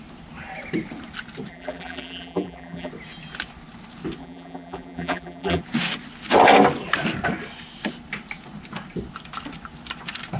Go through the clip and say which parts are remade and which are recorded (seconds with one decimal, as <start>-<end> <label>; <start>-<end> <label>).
0.0-1.5 recorded; 1.5-2.9 remade; 2.9-4.2 recorded; 4.2-5.6 remade; 5.6-10.4 recorded